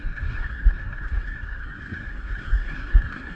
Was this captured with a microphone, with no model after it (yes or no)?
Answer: no